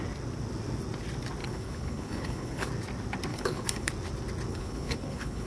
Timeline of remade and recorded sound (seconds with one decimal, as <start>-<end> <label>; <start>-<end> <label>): 0.0-1.4 recorded; 1.4-2.7 remade; 2.7-3.3 recorded; 3.3-3.9 remade; 3.9-4.5 recorded; 4.5-5.5 remade